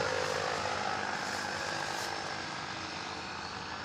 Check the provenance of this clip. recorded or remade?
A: recorded